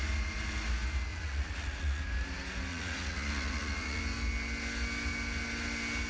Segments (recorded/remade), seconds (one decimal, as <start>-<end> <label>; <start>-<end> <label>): 0.0-1.1 recorded; 1.1-2.0 remade; 2.0-2.7 recorded; 2.7-4.0 remade; 4.0-6.1 recorded